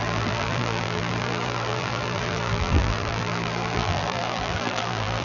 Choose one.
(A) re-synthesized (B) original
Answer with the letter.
A